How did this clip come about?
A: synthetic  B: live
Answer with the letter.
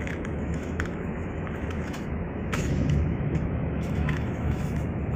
A